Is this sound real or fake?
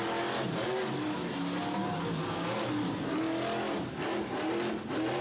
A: real